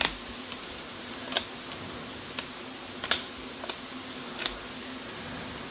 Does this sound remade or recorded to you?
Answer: remade